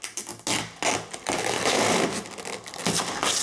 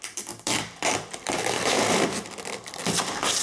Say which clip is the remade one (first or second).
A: second